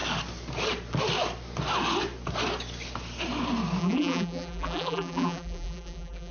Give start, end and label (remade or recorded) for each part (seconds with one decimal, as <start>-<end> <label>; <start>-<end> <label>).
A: 0.0-3.8 recorded; 3.8-6.3 remade